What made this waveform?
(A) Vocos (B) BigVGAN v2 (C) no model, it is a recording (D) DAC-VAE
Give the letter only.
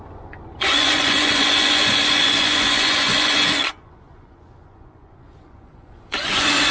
A